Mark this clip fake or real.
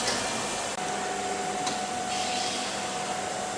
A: real